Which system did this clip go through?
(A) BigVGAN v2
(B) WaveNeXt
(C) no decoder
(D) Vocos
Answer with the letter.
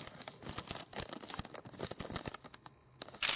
C